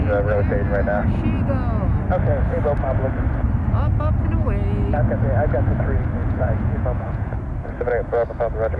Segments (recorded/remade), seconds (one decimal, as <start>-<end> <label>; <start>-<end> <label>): 0.0-6.2 recorded; 6.2-7.3 remade; 7.3-8.8 recorded